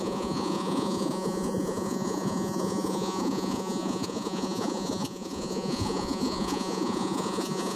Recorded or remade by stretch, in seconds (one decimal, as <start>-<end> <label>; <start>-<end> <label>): 0.0-7.8 remade